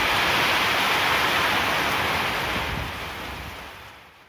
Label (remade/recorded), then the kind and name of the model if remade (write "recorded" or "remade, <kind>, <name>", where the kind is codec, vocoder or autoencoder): recorded